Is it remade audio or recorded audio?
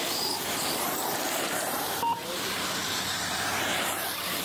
remade